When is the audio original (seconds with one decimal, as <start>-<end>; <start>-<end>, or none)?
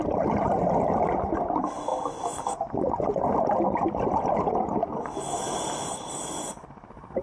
0.0-7.2